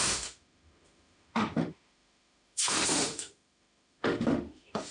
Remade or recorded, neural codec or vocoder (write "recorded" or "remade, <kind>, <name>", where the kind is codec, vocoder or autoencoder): remade, autoencoder, DAC-VAE